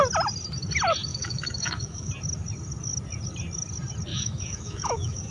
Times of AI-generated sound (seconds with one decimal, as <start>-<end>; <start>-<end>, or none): 1.1-2.1; 4.1-5.3